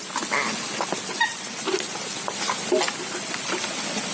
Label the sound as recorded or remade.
recorded